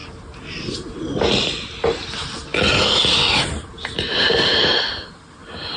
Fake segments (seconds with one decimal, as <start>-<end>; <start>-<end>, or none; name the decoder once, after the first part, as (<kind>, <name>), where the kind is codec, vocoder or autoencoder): none